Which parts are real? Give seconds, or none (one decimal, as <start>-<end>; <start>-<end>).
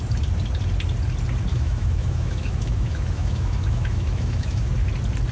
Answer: 0.0-1.5; 4.7-5.3